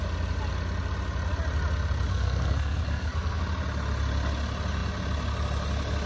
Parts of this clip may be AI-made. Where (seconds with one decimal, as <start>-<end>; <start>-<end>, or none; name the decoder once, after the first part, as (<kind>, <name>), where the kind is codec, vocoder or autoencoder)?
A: 2.1-3.4 (codec, SNAC)